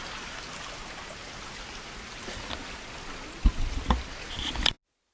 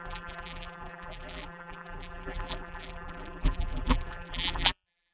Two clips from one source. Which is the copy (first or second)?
second